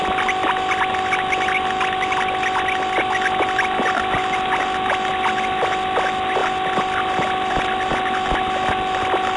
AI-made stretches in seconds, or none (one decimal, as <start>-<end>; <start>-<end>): none

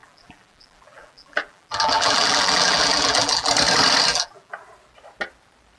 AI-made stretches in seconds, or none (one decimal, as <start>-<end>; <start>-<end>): 0.0-3.5; 4.1-4.6

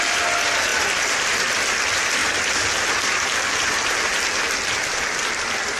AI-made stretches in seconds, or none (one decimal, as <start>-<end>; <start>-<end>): none